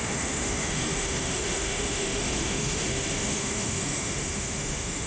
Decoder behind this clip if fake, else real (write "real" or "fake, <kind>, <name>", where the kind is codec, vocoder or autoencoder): fake, autoencoder, DAC-VAE